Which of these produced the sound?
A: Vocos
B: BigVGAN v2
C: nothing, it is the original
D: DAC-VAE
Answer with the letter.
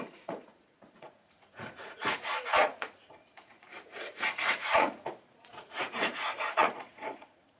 A